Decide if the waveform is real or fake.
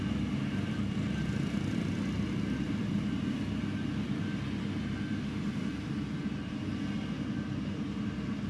real